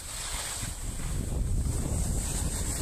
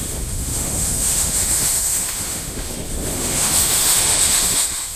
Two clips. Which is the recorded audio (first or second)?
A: first